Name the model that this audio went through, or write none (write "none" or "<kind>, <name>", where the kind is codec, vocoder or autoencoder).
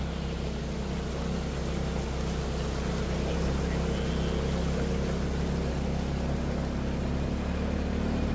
none